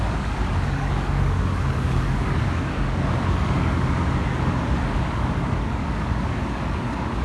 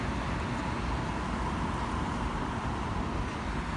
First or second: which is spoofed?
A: first